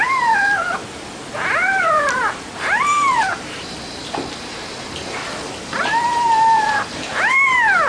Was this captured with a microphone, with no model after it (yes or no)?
no